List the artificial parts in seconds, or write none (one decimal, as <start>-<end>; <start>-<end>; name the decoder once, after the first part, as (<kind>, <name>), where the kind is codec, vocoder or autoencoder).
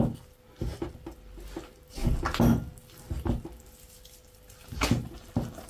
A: none